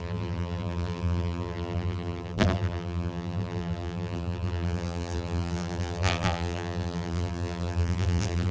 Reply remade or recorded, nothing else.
remade